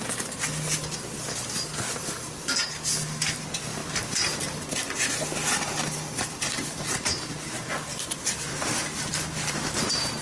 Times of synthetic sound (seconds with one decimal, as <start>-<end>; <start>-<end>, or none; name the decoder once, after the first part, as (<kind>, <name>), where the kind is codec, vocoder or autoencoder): 7.9-9.6 (vocoder, BigVGAN v2)